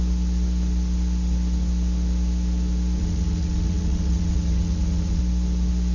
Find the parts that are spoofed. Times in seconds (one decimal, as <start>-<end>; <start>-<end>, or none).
3.0-5.2